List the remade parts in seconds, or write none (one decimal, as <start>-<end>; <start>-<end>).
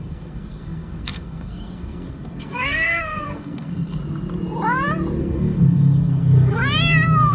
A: 0.0-4.0; 5.2-6.6